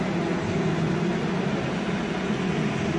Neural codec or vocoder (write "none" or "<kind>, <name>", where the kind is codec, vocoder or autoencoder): none